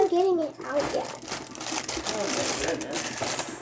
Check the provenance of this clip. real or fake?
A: real